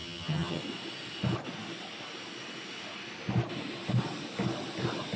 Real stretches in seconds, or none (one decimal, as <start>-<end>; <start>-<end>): 0.6-5.2